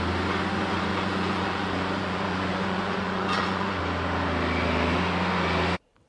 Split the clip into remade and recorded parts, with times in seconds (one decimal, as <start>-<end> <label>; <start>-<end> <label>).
0.0-0.9 recorded; 0.9-3.8 remade; 3.8-6.1 recorded